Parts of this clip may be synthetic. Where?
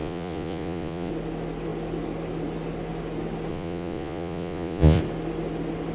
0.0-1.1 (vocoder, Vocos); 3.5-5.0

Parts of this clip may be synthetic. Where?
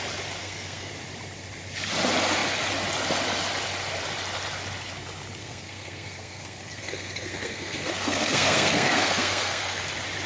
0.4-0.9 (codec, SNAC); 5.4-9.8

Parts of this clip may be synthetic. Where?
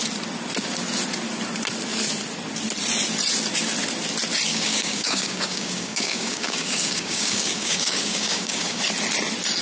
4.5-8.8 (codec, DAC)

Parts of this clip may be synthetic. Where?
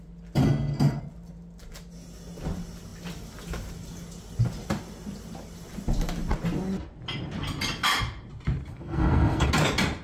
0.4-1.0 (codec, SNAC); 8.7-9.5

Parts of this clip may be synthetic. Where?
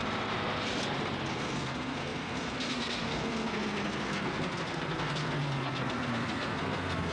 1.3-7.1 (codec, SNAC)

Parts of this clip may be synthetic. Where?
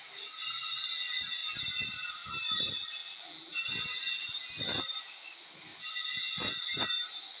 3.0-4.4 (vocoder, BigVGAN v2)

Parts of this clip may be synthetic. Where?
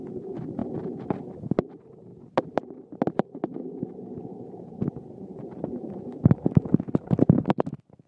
none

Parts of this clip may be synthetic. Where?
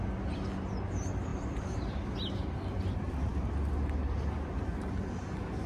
none